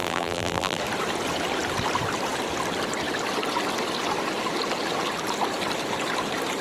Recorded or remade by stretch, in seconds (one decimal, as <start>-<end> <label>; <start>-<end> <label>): 0.0-0.8 remade; 0.8-6.6 recorded